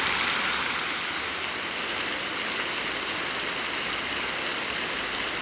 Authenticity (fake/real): real